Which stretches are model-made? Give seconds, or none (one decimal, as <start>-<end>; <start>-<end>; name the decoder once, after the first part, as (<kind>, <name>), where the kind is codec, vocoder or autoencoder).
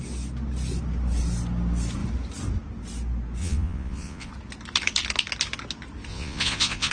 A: 3.4-4.3 (vocoder, Vocos); 6.1-6.9